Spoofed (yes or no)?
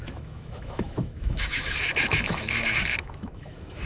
yes